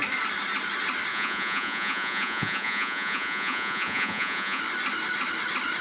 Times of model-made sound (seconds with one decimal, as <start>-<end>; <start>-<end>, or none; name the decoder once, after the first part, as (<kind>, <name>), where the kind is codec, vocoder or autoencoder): 1.1-4.6 (vocoder, Vocos)